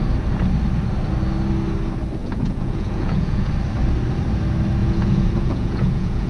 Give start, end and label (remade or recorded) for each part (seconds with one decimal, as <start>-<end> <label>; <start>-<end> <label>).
0.0-2.2 recorded; 2.2-3.5 remade; 3.5-4.8 recorded; 4.8-6.3 remade